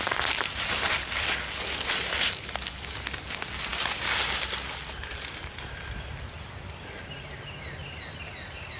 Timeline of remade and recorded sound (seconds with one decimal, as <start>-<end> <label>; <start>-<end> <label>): 0.0-8.8 recorded